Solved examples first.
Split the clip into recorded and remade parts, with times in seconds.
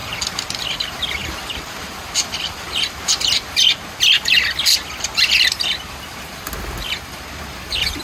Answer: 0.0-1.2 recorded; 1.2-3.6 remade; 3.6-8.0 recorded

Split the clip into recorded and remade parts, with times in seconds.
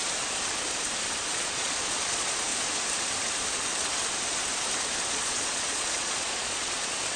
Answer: 0.0-1.3 recorded; 1.3-2.5 remade; 2.5-5.1 recorded; 5.1-7.2 remade